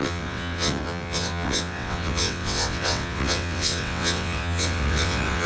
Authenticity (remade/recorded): remade